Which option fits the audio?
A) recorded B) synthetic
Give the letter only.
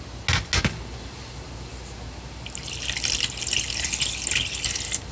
A